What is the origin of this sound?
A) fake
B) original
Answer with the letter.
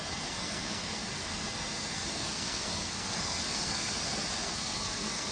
A